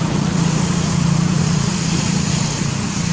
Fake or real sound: fake